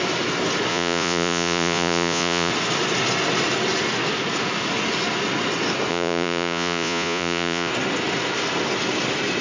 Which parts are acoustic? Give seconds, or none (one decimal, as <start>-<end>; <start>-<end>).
0.0-0.7; 2.5-5.9; 7.7-9.4